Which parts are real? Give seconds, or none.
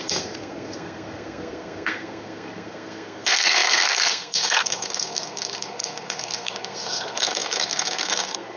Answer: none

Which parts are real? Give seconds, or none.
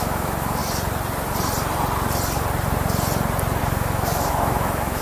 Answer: 0.6-3.6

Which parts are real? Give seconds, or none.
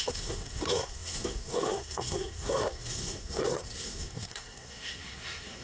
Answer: none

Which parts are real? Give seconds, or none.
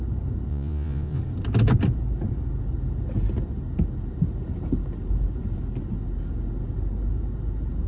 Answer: 0.0-0.5; 1.2-7.9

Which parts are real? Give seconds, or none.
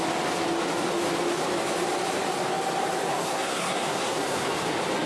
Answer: 0.0-3.1; 4.5-5.1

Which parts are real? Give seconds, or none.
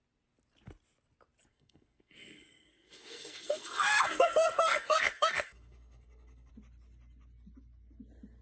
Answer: 0.0-1.5; 6.5-8.4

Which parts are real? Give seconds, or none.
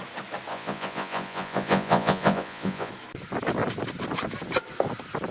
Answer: 0.0-0.5; 2.9-5.3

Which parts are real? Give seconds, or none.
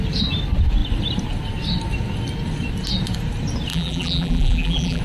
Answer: 0.0-3.7